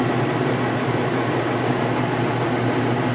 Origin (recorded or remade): recorded